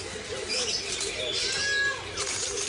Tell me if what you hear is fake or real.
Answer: real